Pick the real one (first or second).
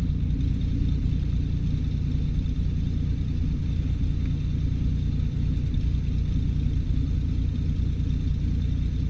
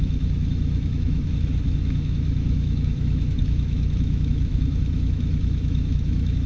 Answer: first